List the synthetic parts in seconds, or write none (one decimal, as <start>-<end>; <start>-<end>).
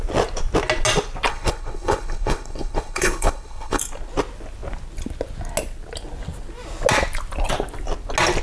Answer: 1.3-3.8